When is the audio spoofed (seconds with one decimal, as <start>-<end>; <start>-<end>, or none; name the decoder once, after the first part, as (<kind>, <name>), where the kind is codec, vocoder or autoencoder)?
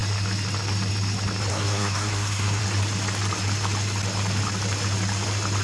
1.5-2.6 (codec, SNAC)